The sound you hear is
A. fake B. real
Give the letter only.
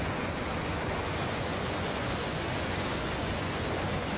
A